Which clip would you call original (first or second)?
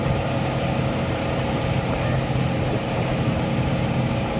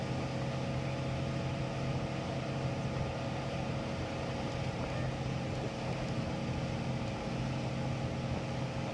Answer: second